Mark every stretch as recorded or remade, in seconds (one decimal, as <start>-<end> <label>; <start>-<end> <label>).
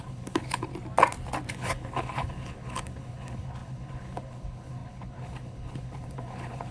0.0-0.7 remade; 0.7-1.5 recorded; 1.5-6.7 remade